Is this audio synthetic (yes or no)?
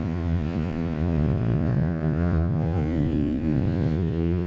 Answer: yes